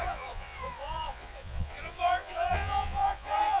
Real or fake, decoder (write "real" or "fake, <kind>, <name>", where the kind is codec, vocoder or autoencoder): fake, vocoder, Vocos